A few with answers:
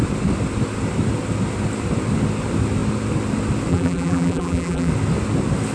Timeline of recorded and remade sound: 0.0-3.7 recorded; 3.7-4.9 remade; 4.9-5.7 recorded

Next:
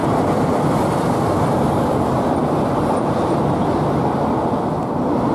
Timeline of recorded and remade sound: 0.0-2.6 recorded; 2.6-3.6 remade; 3.6-5.3 recorded

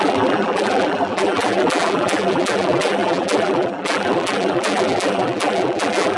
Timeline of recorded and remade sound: 0.0-6.2 remade

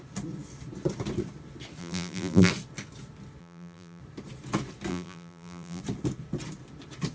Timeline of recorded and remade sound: 0.0-1.8 recorded; 1.8-2.5 remade; 2.5-3.4 recorded; 3.4-4.0 remade; 4.0-4.9 recorded; 4.9-5.8 remade; 5.8-7.1 recorded

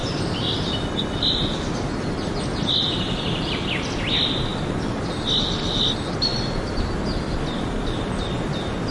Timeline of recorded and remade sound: 0.0-8.9 recorded

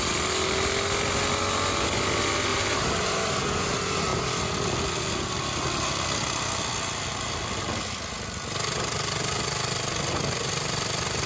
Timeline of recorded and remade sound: 0.0-2.5 recorded; 2.5-3.4 remade; 3.4-11.3 recorded